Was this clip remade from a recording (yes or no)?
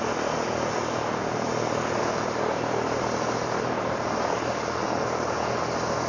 no